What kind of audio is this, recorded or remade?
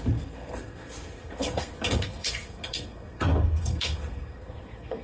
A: remade